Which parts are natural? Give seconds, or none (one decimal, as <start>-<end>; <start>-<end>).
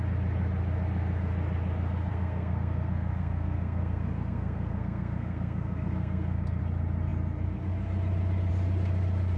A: 0.0-2.1; 6.6-9.4